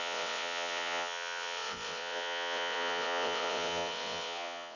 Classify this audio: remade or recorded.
remade